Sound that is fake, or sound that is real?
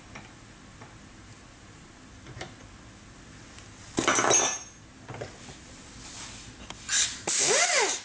real